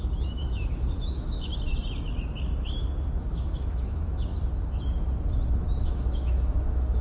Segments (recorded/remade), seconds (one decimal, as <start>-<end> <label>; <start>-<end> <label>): 0.0-1.5 remade; 1.5-3.2 recorded; 3.2-4.3 remade; 4.3-5.8 recorded; 5.8-7.0 remade